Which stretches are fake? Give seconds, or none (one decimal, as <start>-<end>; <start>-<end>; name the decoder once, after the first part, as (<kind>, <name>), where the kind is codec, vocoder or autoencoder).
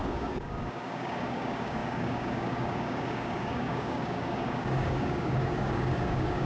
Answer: 0.0-6.5 (codec, DAC)